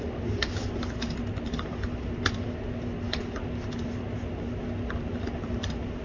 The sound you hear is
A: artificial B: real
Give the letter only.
B